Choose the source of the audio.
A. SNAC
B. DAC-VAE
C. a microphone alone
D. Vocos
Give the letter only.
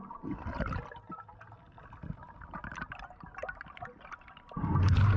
C